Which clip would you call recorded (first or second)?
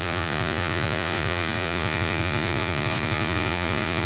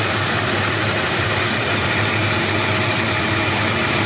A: second